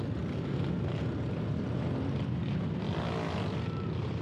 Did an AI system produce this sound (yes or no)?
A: no